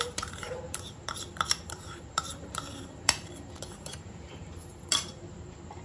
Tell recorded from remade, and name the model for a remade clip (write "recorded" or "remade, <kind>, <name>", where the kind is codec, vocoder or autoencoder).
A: remade, vocoder, BigVGAN v2